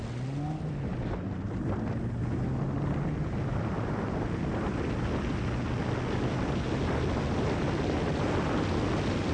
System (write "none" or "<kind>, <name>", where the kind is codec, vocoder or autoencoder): none